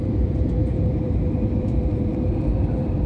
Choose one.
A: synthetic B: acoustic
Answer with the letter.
A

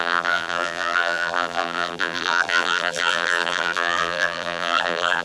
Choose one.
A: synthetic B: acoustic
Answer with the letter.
A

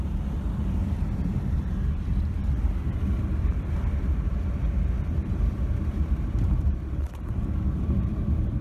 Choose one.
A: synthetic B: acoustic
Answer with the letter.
A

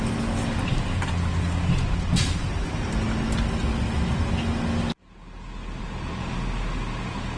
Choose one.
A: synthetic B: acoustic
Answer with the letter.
B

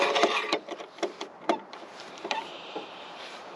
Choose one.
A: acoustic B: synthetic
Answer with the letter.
B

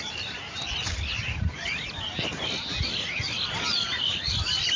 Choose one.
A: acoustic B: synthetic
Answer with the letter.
B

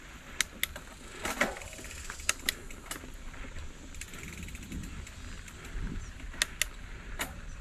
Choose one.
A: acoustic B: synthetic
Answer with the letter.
A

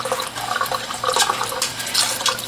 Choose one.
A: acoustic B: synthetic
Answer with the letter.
B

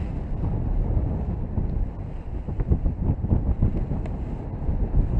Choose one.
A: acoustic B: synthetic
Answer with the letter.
A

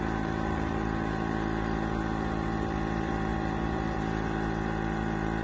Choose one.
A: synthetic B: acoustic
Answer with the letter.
A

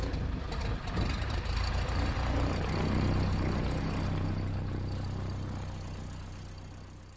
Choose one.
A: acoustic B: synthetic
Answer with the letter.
A